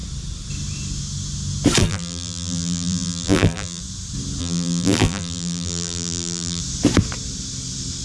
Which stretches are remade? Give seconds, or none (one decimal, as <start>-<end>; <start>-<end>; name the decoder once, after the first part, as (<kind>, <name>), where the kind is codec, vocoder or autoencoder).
1.8-3.8 (vocoder, BigVGAN v2); 4.4-6.6